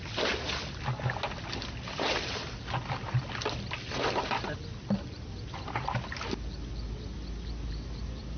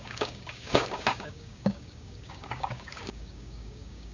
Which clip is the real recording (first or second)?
first